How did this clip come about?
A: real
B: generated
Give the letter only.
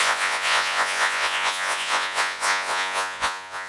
B